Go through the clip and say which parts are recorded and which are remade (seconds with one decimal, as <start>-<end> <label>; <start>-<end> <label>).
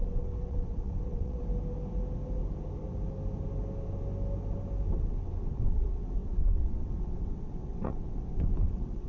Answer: 0.0-1.4 remade; 1.4-4.9 recorded; 4.9-9.1 remade